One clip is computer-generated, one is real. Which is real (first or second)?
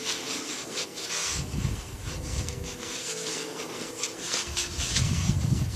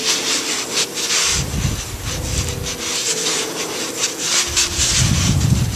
second